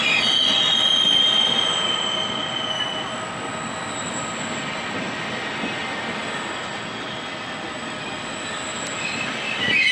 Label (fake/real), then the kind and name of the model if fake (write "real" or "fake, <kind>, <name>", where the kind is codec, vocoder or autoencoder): real